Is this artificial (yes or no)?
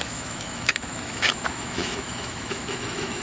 yes